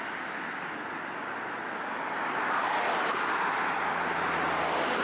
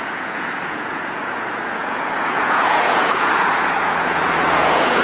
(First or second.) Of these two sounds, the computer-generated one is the second